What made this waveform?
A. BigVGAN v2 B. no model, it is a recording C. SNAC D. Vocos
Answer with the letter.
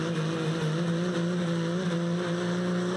B